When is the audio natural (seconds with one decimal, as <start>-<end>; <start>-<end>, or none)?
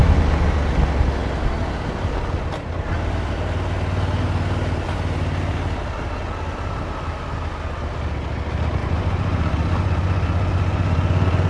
0.0-8.8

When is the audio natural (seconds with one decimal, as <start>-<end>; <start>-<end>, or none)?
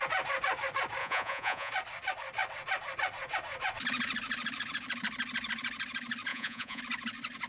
0.0-1.0; 1.7-6.3; 6.8-7.5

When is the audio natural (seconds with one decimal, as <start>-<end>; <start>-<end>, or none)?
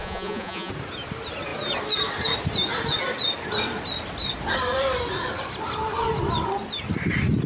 0.7-7.5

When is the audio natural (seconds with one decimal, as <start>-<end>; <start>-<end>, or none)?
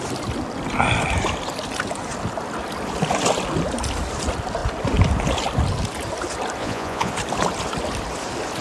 0.0-6.6; 7.1-8.6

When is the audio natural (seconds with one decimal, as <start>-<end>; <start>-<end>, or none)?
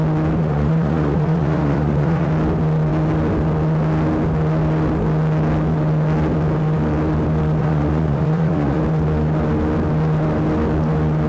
0.0-0.4; 2.3-7.6; 8.8-11.3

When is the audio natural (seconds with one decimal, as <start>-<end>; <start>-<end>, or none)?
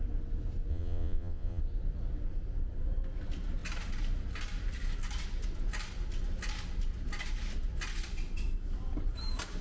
0.0-0.7; 1.6-9.6